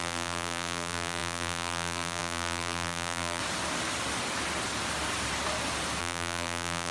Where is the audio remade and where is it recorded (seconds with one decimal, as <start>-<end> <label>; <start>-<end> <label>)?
0.0-3.4 remade; 3.4-6.0 recorded; 6.0-6.9 remade